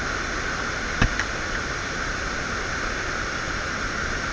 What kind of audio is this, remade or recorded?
recorded